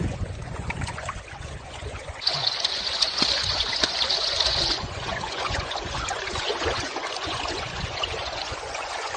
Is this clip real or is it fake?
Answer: fake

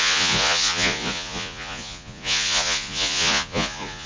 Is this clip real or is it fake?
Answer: fake